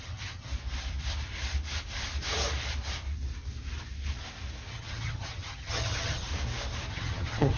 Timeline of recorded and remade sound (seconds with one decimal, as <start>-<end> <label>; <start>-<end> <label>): 0.0-0.5 remade; 0.5-4.7 recorded; 4.7-6.3 remade; 6.3-6.9 recorded; 6.9-7.6 remade